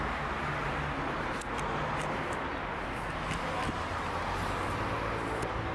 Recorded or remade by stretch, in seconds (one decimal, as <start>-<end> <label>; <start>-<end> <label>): 0.0-5.7 recorded